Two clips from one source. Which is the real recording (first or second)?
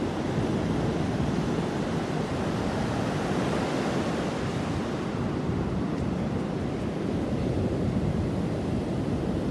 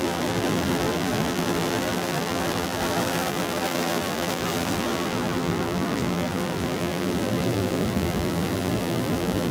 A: first